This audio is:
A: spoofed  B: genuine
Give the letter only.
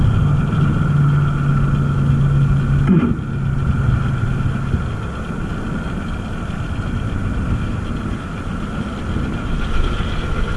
B